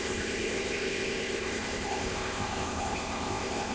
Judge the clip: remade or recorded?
remade